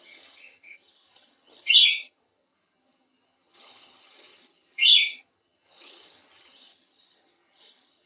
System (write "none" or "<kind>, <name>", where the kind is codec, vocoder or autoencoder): vocoder, HiFi-GAN